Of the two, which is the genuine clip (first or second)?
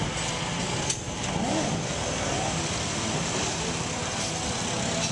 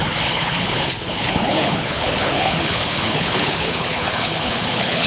first